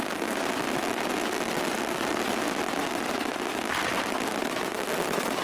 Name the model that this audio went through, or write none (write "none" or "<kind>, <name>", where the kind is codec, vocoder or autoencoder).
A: none